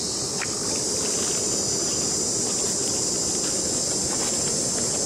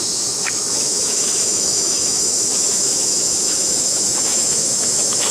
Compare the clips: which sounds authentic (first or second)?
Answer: first